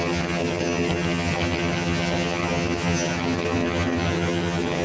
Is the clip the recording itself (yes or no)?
no